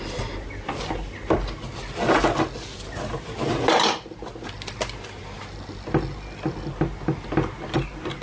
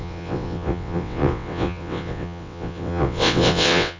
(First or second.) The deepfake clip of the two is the second